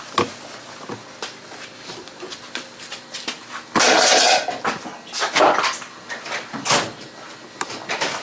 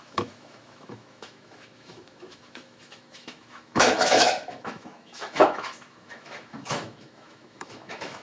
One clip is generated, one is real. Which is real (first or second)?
first